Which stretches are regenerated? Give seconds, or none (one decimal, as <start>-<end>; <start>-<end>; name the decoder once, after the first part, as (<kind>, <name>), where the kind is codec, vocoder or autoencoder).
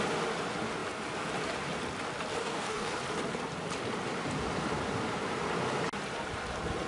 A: 2.4-3.0 (codec, DAC)